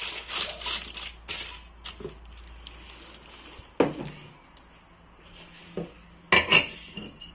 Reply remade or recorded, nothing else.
recorded